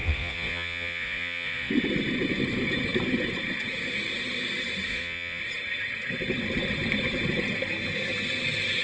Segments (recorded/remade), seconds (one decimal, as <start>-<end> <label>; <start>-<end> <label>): 0.0-1.7 remade; 1.7-4.9 recorded; 4.9-5.4 remade; 5.4-8.8 recorded